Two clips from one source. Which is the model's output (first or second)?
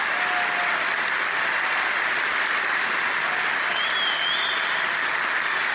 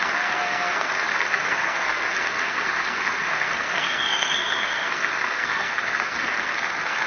second